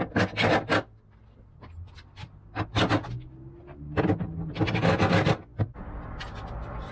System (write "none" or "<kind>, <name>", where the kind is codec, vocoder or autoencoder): none